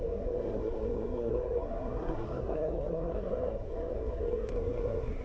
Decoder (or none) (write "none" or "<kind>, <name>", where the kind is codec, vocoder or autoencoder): codec, SNAC